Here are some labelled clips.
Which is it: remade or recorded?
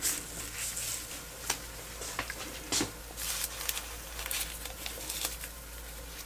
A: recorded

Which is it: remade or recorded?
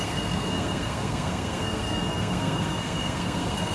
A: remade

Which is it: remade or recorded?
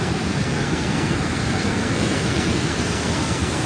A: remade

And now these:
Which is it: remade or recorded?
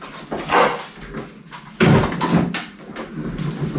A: recorded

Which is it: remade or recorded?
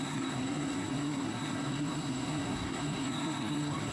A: remade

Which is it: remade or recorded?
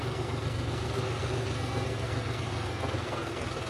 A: remade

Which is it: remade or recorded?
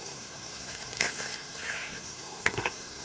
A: remade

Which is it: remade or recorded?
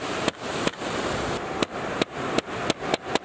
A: recorded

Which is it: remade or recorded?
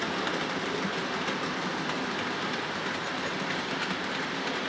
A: recorded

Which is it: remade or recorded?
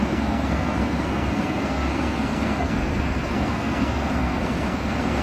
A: remade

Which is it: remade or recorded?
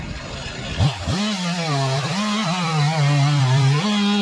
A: recorded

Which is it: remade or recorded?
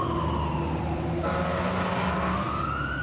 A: recorded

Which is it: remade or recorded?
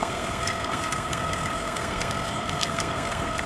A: remade